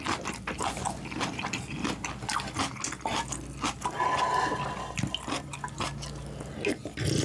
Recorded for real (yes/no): yes